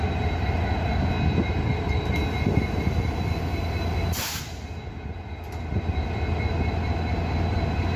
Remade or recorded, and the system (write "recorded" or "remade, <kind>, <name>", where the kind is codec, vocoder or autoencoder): recorded